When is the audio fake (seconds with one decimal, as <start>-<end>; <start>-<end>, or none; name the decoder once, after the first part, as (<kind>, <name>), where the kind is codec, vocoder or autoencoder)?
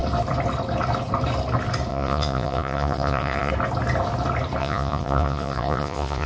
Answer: 1.9-3.5 (vocoder, Vocos); 4.6-6.3